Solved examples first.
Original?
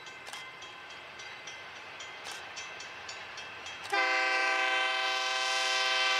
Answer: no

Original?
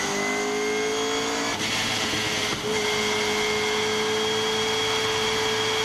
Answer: yes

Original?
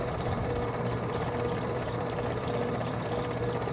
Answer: no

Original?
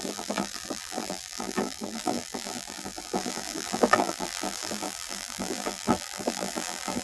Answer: no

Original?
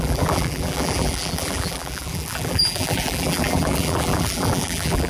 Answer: no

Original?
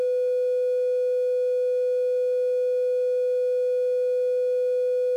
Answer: yes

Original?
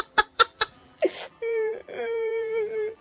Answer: no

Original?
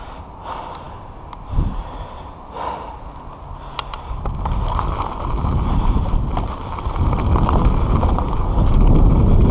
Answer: yes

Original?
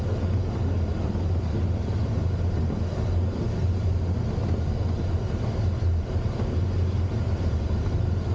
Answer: yes